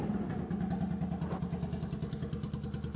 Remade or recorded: recorded